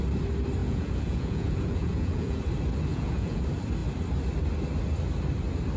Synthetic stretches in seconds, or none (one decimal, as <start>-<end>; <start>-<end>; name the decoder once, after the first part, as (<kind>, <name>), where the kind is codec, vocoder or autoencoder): 0.6-2.4 (vocoder, Vocos); 2.9-3.4